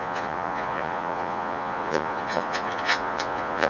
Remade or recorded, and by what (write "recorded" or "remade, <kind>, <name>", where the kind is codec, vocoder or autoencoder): remade, vocoder, Vocos